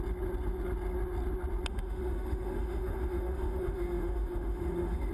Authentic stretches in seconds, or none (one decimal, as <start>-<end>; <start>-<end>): 0.0-1.7